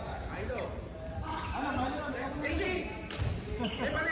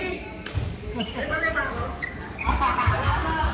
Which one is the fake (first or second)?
second